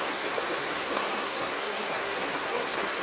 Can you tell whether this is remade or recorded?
remade